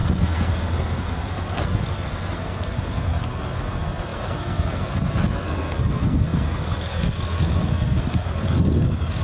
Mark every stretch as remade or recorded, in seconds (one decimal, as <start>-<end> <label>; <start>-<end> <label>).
0.0-9.2 remade